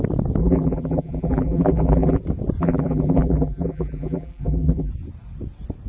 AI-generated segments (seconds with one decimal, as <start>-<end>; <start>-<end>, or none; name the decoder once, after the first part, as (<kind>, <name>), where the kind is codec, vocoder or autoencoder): 0.4-2.2 (vocoder, BigVGAN v2); 2.6-4.9